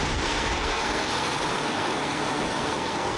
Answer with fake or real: fake